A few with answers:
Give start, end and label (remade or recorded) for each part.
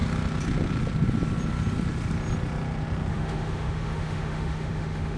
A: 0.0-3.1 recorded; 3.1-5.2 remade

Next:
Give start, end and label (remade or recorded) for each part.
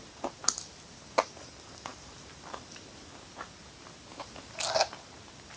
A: 0.0-5.6 recorded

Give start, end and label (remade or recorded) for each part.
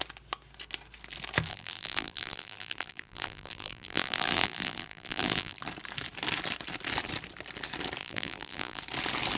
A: 0.0-1.5 recorded; 1.5-5.6 remade; 5.6-8.0 recorded; 8.0-8.8 remade; 8.8-9.4 recorded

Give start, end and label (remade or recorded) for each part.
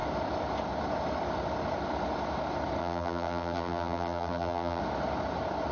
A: 0.0-2.8 recorded; 2.8-4.8 remade; 4.8-5.7 recorded